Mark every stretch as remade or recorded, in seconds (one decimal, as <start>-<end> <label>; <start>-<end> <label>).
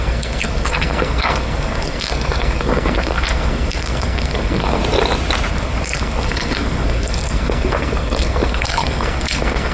0.0-4.8 remade; 4.8-5.5 recorded; 5.5-9.7 remade